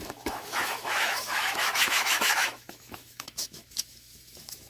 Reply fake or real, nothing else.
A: fake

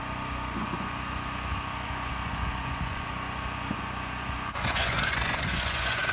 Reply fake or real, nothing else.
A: fake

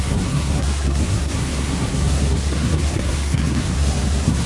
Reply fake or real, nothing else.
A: fake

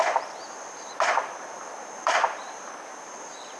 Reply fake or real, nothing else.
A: fake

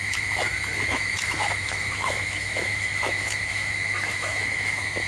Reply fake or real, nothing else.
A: fake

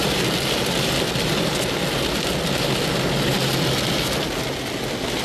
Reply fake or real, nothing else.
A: real